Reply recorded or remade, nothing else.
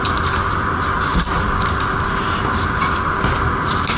recorded